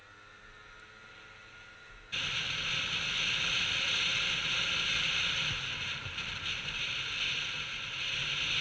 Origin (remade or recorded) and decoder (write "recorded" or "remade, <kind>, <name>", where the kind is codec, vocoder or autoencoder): recorded